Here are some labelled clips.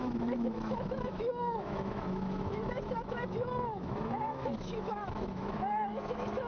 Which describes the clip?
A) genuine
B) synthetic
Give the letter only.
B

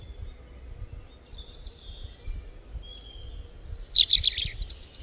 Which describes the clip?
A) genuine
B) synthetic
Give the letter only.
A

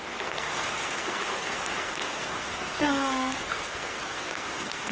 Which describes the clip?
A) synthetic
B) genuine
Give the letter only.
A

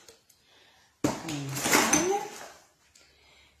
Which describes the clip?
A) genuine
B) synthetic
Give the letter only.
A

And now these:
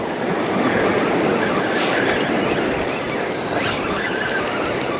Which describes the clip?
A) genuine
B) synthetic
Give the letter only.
A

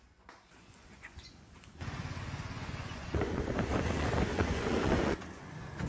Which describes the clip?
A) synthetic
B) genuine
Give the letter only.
A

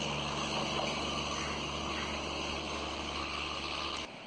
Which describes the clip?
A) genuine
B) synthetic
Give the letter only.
A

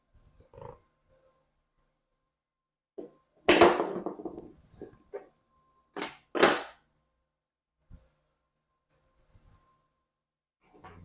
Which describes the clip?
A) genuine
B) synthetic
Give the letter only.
A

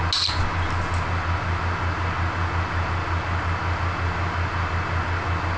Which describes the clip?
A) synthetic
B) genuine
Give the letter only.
B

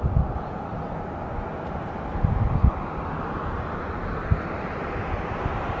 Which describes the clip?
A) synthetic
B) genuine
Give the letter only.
B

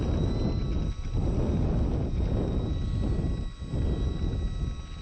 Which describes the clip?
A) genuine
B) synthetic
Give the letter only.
A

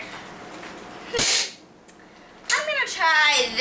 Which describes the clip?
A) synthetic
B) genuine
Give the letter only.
B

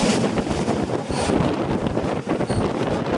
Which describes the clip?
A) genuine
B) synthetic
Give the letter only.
A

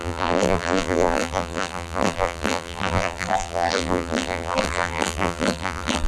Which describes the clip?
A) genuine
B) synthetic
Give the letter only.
B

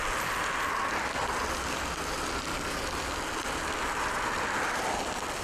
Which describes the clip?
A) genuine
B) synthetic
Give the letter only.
A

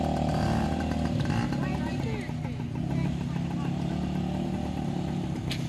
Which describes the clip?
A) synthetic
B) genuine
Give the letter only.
B